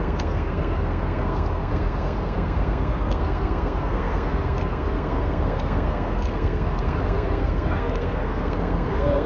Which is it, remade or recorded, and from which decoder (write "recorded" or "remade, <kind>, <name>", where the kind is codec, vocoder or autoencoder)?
remade, codec, SNAC